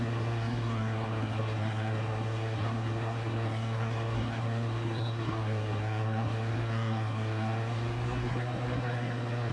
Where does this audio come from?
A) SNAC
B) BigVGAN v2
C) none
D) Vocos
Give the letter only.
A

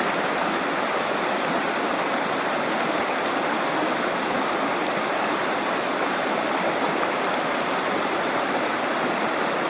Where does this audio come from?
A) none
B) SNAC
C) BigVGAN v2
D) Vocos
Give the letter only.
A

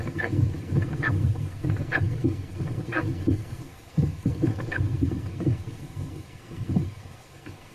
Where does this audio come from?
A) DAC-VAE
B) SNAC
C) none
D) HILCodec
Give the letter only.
B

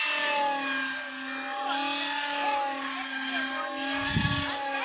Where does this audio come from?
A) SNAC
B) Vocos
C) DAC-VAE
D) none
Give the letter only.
D